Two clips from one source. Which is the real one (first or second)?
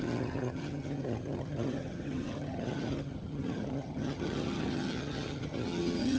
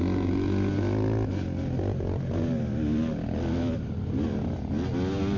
second